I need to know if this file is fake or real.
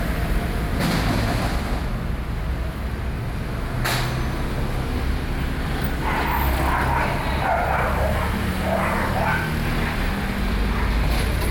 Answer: real